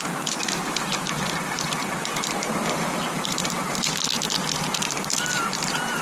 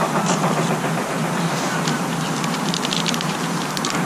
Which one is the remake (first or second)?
first